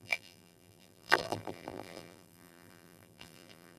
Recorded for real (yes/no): no